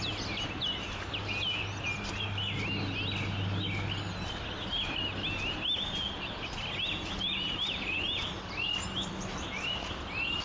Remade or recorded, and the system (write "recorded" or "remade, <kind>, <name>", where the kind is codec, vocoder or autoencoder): recorded